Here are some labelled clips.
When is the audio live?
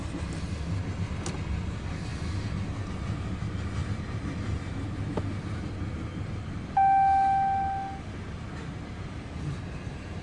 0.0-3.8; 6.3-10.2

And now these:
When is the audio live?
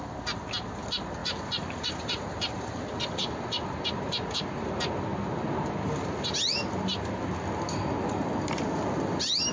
0.0-1.2; 4.0-9.5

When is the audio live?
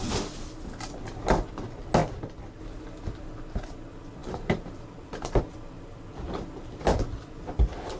0.0-4.2; 5.4-8.0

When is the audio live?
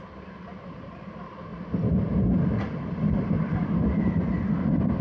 0.0-5.0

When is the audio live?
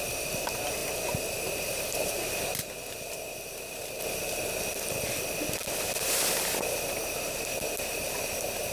0.0-8.7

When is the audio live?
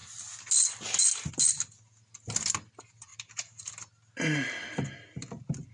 0.0-3.1; 3.7-5.7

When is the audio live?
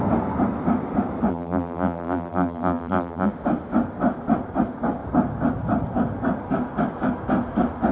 0.0-1.3; 3.3-7.9